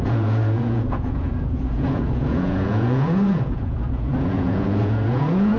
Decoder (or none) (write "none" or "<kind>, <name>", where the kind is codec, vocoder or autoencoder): vocoder, Vocos